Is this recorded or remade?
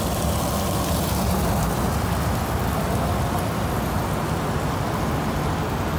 recorded